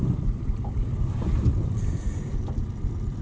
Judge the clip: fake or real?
real